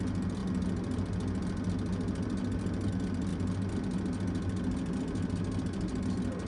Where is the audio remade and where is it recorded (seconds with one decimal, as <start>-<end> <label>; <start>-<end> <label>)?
0.0-6.5 recorded